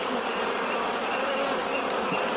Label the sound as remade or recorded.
recorded